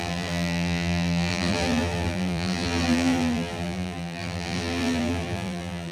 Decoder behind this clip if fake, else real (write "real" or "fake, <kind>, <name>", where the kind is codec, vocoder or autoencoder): fake, vocoder, BigVGAN v2